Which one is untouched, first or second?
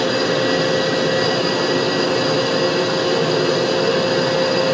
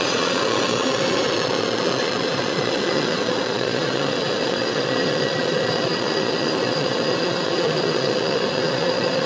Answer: first